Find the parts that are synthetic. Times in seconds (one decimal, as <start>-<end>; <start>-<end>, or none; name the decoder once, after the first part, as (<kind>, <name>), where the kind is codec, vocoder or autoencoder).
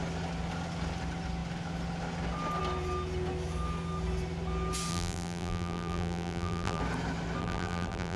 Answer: 4.9-6.8 (vocoder, BigVGAN v2); 7.4-8.2